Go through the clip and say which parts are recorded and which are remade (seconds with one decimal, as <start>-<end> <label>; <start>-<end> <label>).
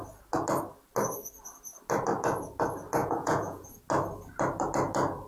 0.0-3.0 recorded; 3.0-3.8 remade; 3.8-5.3 recorded